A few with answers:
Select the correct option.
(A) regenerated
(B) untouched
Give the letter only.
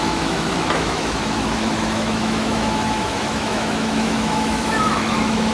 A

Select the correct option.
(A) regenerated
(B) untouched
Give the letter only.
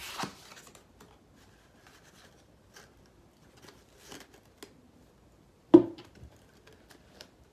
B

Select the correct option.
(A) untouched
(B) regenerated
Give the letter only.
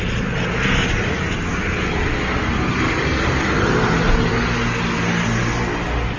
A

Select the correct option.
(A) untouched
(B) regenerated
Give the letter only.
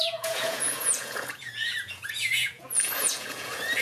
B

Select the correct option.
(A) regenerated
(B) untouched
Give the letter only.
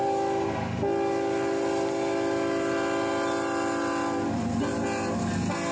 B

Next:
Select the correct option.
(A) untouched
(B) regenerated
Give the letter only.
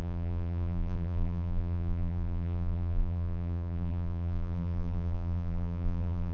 B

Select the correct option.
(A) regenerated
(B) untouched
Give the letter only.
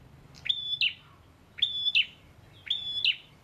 B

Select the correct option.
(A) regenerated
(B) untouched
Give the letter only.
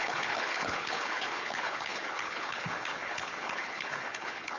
A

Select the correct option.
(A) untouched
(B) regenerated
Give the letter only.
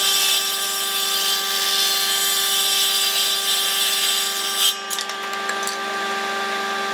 A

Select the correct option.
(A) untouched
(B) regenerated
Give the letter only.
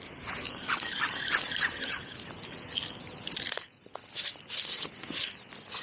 A